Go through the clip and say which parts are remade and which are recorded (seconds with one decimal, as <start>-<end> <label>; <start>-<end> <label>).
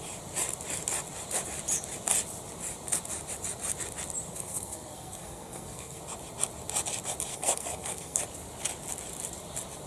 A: 0.0-4.3 recorded; 4.3-6.0 remade; 6.0-7.3 recorded; 7.3-8.2 remade; 8.2-9.9 recorded